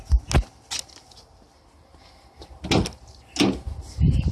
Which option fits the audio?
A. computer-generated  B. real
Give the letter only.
B